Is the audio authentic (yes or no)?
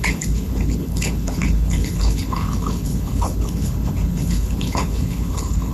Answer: no